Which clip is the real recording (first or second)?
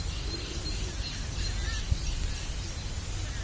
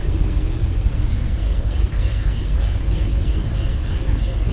first